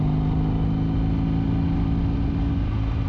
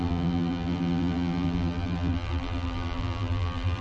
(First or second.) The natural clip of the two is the first